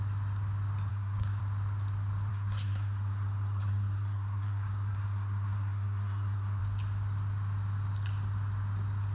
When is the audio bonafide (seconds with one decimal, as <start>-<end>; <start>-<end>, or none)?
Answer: 0.0-0.9; 1.4-2.3; 6.6-9.1